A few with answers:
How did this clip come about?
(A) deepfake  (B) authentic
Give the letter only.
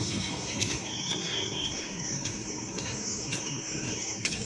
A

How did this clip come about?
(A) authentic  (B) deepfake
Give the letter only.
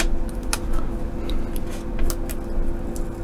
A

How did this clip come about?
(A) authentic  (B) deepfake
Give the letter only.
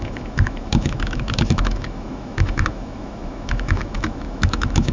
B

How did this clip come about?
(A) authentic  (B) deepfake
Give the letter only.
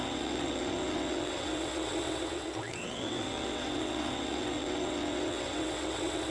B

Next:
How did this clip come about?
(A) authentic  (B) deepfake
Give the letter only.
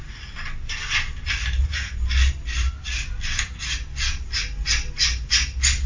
A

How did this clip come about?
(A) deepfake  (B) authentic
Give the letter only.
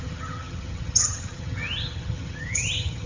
A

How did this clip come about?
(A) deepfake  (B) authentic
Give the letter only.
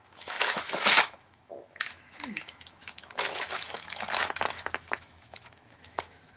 A